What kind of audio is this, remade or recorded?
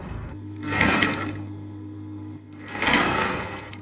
remade